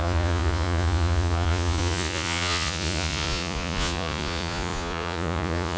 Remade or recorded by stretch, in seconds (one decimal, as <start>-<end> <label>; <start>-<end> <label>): 0.0-5.8 remade